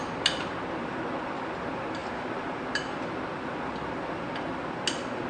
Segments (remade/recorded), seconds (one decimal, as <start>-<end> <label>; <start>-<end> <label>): 0.0-5.3 recorded